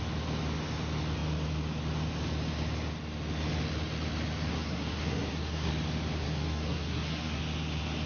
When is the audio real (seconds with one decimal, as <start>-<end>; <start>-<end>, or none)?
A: 0.0-4.5; 5.7-6.2; 7.4-8.1